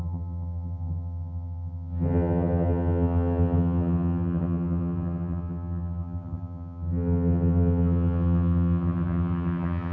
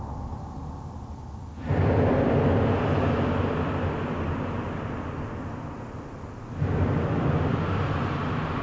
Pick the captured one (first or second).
second